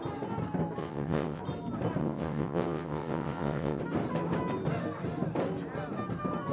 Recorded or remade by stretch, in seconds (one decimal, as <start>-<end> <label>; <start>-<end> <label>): 0.0-0.8 recorded; 0.8-1.4 remade; 1.4-2.0 recorded; 2.0-3.8 remade; 3.8-6.5 recorded